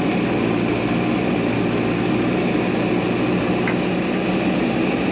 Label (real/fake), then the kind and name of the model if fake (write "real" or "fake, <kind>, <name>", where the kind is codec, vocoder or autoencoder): real